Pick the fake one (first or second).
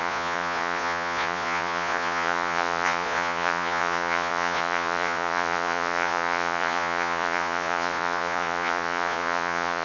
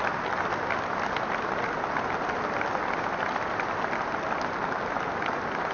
first